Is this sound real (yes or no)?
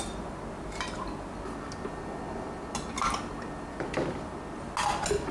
yes